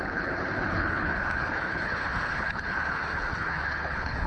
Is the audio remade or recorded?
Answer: remade